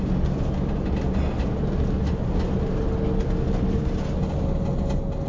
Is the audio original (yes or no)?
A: yes